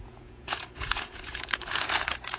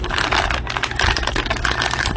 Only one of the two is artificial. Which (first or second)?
first